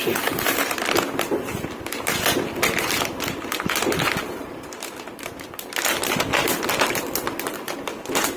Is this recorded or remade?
recorded